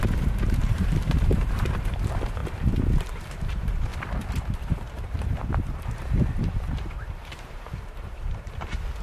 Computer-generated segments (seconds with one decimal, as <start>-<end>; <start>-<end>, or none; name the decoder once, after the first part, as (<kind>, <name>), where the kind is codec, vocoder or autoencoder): 0.0-2.4 (vocoder, BigVGAN v2); 3.0-3.9; 4.9-9.0